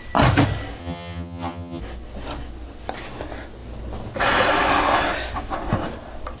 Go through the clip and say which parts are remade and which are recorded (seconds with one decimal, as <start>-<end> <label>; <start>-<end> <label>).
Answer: 0.0-0.8 recorded; 0.8-1.8 remade; 1.8-6.4 recorded